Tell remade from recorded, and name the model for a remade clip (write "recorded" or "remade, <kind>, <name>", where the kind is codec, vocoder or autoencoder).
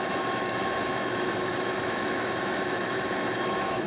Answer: remade, autoencoder, DAC-VAE